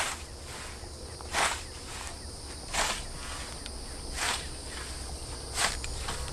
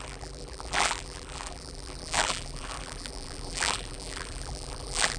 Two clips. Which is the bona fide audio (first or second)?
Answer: first